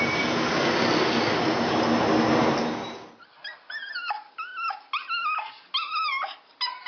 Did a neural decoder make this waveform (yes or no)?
no